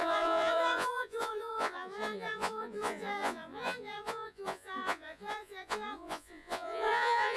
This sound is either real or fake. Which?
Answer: fake